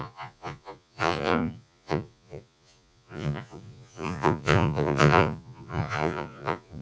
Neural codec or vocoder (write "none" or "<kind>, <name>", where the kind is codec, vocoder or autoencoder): vocoder, Vocos